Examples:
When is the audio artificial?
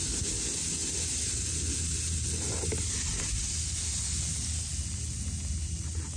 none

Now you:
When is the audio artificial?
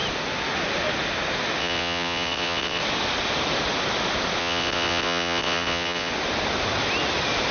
1.6-2.8; 4.4-6.1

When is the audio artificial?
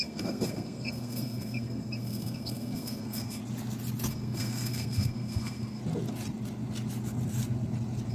0.0-3.4; 4.1-5.8